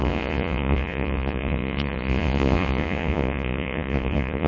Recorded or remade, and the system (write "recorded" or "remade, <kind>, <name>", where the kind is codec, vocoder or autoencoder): remade, vocoder, Vocos